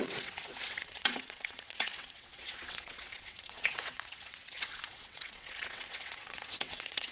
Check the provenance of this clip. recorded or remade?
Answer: remade